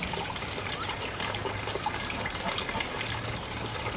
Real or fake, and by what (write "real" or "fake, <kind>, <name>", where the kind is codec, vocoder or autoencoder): real